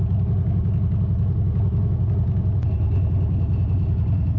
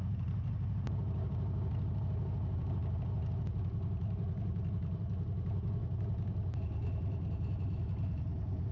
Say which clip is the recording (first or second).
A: first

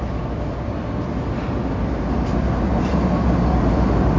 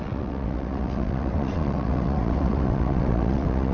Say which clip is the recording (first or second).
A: first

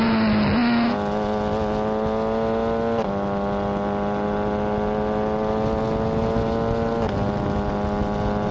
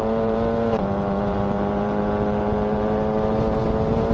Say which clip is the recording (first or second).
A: first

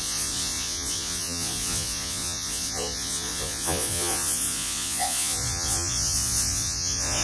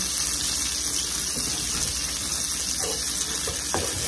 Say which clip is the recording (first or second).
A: second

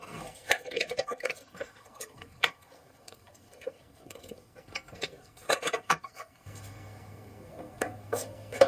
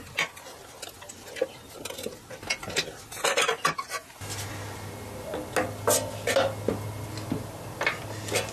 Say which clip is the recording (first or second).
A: second